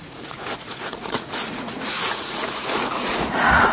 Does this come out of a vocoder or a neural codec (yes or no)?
yes